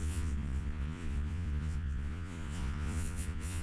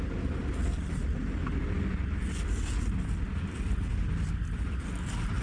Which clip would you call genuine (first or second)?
second